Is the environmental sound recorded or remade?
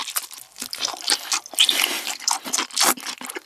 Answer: recorded